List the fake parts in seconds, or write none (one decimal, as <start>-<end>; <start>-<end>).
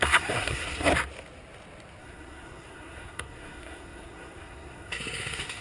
0.0-0.9; 2.0-5.6